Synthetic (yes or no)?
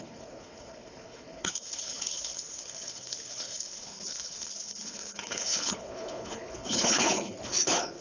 yes